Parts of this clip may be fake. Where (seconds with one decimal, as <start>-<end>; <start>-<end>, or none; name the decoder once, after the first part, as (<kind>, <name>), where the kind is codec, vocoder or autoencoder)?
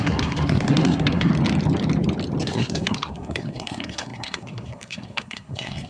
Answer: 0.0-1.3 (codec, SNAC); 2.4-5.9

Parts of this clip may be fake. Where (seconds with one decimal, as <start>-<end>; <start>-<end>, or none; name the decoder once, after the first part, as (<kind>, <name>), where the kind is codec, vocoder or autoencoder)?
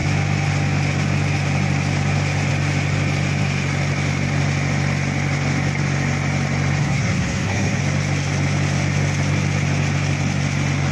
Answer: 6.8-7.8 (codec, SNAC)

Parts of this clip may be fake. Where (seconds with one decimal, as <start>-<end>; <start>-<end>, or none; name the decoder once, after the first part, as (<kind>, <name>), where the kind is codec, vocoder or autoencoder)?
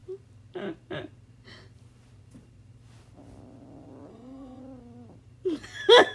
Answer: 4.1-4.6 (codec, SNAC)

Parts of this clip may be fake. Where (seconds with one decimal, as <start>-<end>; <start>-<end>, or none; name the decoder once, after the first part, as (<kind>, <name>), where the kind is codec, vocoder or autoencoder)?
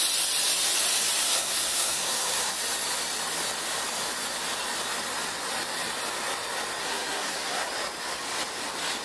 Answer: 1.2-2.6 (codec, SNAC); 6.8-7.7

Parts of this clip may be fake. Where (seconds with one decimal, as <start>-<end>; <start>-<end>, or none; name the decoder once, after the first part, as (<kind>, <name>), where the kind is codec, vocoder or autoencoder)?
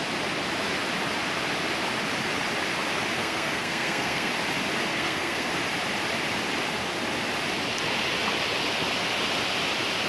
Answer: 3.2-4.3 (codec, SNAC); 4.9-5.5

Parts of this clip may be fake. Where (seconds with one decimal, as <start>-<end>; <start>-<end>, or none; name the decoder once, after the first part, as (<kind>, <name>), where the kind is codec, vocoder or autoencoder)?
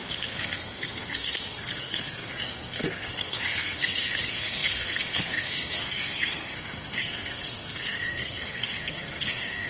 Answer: 0.0-9.7 (codec, SNAC)